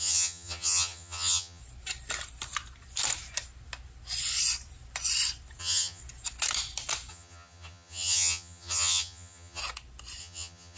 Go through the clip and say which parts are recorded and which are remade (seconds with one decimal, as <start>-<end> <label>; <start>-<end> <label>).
0.0-1.6 remade; 1.6-5.6 recorded; 5.6-6.0 remade; 6.0-7.1 recorded; 7.1-9.6 remade; 9.6-10.2 recorded; 10.2-10.8 remade